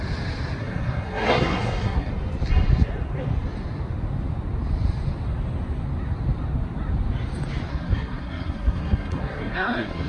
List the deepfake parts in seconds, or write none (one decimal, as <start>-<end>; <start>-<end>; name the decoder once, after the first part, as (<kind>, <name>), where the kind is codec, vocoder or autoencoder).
0.6-2.1 (codec, SNAC); 7.7-10.1